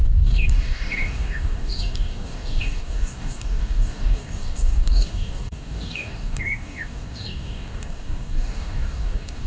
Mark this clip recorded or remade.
remade